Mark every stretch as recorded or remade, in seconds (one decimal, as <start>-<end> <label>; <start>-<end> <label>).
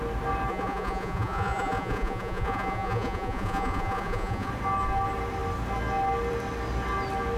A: 0.0-0.5 recorded; 0.5-4.5 remade; 4.5-7.4 recorded